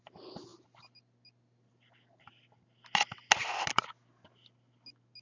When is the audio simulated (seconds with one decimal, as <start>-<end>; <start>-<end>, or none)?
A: none